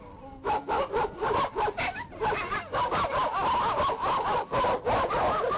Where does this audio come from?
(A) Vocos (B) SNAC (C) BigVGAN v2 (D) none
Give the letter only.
D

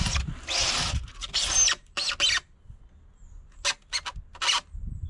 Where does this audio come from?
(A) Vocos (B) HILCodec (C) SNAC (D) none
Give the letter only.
D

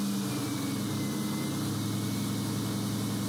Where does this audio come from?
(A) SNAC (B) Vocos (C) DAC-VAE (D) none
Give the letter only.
D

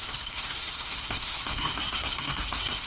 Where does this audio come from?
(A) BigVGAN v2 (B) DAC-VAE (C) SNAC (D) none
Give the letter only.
C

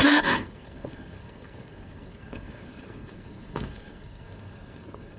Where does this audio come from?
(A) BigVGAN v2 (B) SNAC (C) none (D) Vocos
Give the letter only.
B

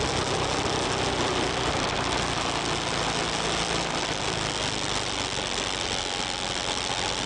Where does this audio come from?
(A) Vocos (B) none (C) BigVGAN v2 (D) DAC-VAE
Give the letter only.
C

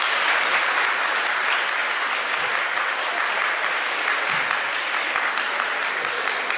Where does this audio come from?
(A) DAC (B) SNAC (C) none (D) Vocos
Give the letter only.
C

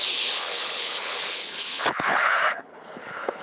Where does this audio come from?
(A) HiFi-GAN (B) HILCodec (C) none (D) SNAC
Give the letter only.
B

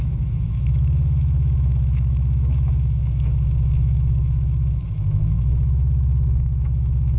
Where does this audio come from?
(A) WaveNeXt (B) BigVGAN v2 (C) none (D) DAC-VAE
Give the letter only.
D